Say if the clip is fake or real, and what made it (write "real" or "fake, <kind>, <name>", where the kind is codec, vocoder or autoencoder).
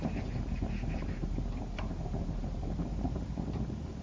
fake, vocoder, BigVGAN v2